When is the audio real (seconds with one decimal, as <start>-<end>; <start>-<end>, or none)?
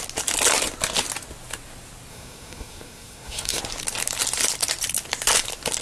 0.0-2.1; 3.6-5.8